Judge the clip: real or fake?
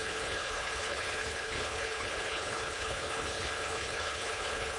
fake